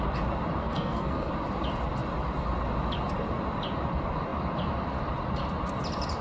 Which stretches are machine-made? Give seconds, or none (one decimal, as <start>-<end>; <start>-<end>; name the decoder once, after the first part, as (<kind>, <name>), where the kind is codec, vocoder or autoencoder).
0.6-1.3 (codec, SNAC)